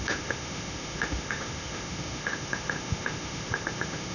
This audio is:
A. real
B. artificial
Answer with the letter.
B